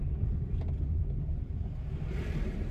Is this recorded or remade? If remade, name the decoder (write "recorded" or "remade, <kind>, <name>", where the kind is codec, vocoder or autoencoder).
remade, vocoder, BigVGAN v2